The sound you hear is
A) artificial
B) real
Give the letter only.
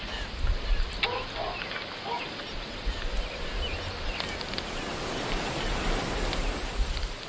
B